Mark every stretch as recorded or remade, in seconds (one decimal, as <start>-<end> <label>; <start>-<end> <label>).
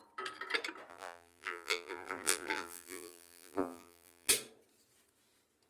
0.0-0.9 recorded; 0.9-4.3 remade; 4.3-5.7 recorded